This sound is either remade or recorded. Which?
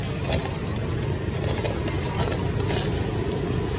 recorded